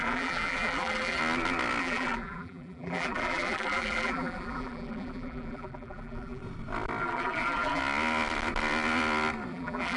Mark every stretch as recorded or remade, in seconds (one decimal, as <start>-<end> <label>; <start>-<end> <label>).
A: 0.0-1.2 remade; 1.2-1.8 recorded; 1.8-6.4 remade; 6.4-7.0 recorded; 7.0-7.8 remade; 7.8-9.5 recorded; 9.5-10.0 remade